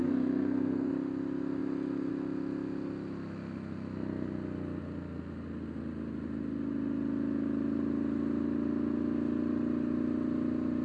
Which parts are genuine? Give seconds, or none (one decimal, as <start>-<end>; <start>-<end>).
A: 0.9-10.8